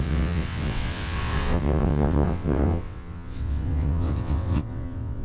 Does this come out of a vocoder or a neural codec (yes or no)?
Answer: yes